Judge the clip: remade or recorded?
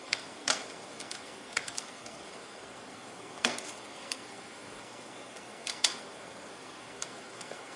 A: remade